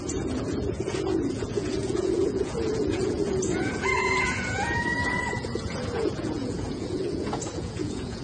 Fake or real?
fake